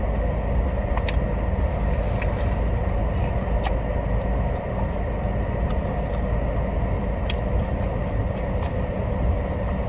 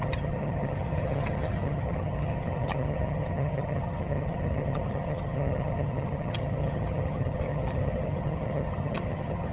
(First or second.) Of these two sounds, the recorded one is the first